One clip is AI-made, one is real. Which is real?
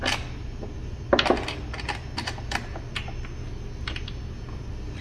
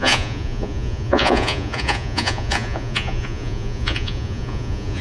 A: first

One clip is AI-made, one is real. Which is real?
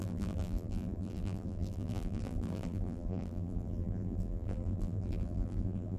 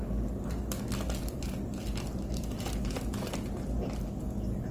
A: second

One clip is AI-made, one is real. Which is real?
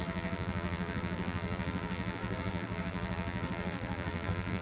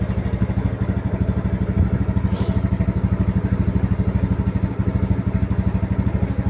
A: second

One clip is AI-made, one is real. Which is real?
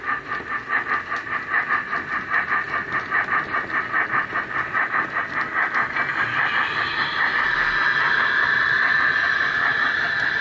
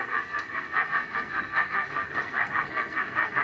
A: first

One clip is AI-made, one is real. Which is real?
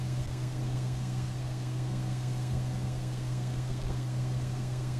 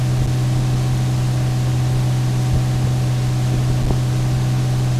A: second